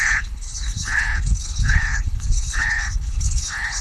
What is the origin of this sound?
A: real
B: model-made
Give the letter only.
B